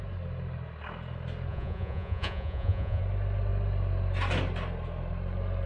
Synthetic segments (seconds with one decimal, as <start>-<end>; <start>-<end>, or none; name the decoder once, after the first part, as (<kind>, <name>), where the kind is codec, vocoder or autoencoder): 1.5-3.0 (vocoder, Vocos)